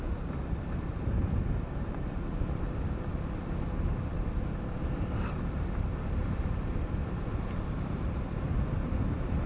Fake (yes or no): no